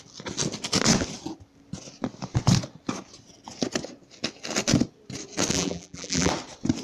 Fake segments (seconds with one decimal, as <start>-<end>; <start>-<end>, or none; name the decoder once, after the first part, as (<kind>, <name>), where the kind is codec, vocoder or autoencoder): 5.5-6.3 (vocoder, BigVGAN v2)